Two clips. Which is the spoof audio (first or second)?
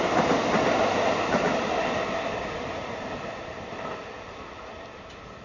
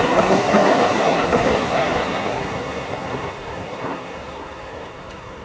second